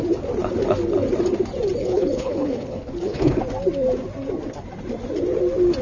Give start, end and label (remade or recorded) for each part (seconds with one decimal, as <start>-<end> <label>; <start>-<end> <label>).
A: 0.0-1.8 recorded; 1.8-3.4 remade; 3.4-5.8 recorded

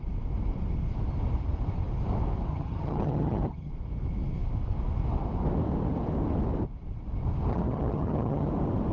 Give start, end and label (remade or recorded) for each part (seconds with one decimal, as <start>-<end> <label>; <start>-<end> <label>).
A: 0.0-2.5 recorded; 2.5-3.7 remade; 3.7-7.5 recorded; 7.5-8.5 remade; 8.5-8.9 recorded

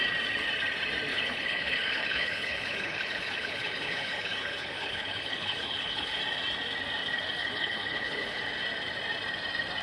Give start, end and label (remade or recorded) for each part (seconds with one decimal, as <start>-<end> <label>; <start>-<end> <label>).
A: 0.0-1.1 recorded; 1.1-6.2 remade; 6.2-7.4 recorded; 7.4-8.4 remade; 8.4-9.8 recorded

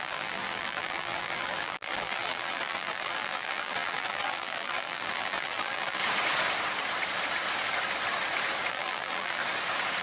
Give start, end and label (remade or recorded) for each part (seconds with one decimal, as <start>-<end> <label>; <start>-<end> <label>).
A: 0.0-6.0 remade; 6.0-8.7 recorded; 8.7-9.4 remade; 9.4-10.0 recorded

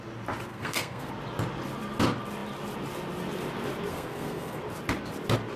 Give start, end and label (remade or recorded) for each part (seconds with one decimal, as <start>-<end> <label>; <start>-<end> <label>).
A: 0.0-0.5 recorded; 0.5-1.1 remade; 1.1-3.9 recorded; 3.9-4.6 remade; 4.6-5.6 recorded

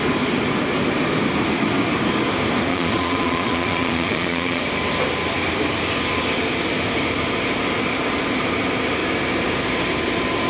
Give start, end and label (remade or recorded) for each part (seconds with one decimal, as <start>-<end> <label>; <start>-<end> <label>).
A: 0.0-2.7 recorded; 2.7-4.6 remade; 4.6-10.5 recorded

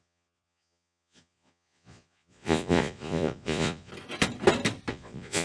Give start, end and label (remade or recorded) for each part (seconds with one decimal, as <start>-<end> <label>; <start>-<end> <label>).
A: 0.0-3.9 remade; 3.9-4.9 recorded; 4.9-5.4 remade